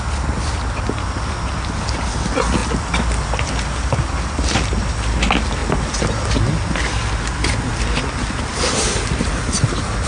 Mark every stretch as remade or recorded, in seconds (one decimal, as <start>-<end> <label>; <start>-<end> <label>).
0.0-10.1 recorded